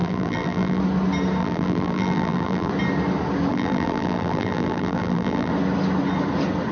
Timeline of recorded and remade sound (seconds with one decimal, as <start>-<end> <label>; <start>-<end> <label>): 0.0-0.8 remade; 0.8-1.4 recorded; 1.4-2.7 remade; 2.7-3.5 recorded; 3.5-5.5 remade; 5.5-6.7 recorded